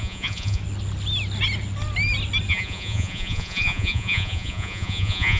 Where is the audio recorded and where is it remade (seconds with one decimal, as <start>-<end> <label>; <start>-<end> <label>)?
0.0-0.6 remade; 0.6-2.5 recorded; 2.5-5.4 remade